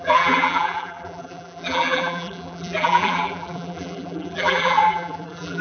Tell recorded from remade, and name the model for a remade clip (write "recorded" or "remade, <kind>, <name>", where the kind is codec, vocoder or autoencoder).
remade, vocoder, BigVGAN v2